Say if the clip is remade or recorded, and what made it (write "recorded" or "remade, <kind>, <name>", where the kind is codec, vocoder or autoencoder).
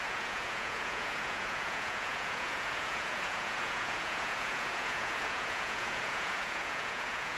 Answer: remade, vocoder, Vocos